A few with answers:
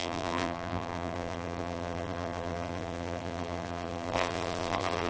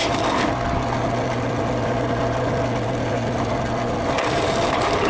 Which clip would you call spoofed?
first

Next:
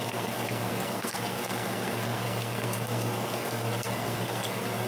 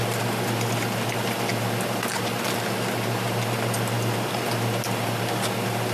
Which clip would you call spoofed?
first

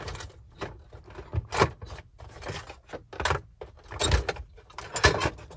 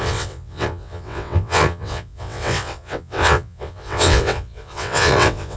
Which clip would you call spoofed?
second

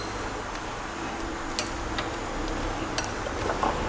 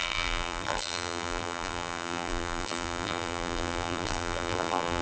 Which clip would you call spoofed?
second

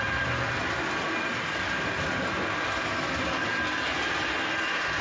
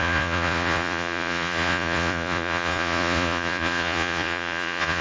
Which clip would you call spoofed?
second